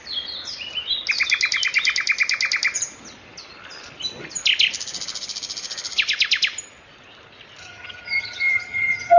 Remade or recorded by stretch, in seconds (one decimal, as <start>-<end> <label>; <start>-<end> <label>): 0.0-7.6 recorded; 7.6-9.2 remade